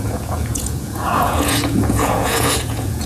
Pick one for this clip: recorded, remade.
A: remade